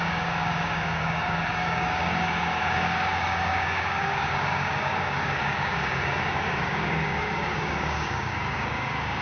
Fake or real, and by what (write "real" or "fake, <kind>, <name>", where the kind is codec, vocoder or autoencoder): fake, codec, DAC